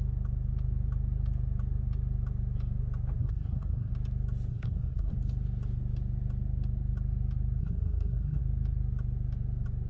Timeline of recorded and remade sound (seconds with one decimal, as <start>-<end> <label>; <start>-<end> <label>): 0.0-3.2 recorded; 3.2-3.9 remade; 3.9-4.5 recorded; 4.5-5.1 remade; 5.1-7.6 recorded; 7.6-8.4 remade; 8.4-9.9 recorded

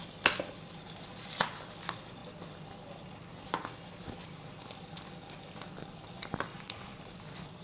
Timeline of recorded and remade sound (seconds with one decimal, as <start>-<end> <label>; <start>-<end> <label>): 0.0-6.5 recorded; 6.5-7.0 remade; 7.0-7.6 recorded

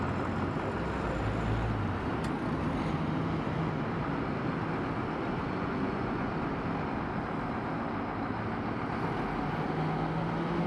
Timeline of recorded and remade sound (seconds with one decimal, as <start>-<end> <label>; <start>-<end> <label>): 0.0-5.3 recorded; 5.3-6.3 remade; 6.3-10.7 recorded

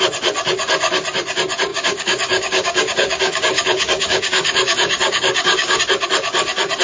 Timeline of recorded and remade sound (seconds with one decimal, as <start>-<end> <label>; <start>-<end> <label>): 0.0-1.7 recorded; 1.7-5.8 remade; 5.8-6.8 recorded

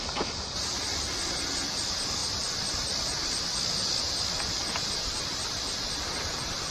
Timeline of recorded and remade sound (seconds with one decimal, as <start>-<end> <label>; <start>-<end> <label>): 0.0-6.7 recorded

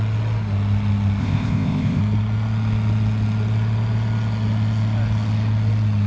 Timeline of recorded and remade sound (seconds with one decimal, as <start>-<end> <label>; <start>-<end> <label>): 0.0-1.2 recorded; 1.2-2.0 remade; 2.0-6.1 recorded